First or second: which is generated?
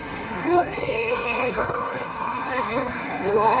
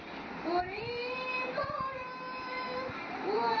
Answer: first